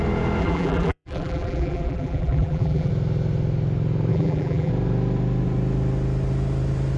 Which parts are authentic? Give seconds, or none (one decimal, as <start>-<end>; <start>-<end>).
0.0-0.4; 2.9-4.1; 4.7-7.0